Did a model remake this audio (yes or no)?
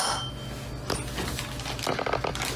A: no